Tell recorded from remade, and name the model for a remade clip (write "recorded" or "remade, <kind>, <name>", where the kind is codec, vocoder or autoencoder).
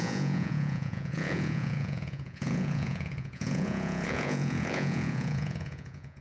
remade, vocoder, Vocos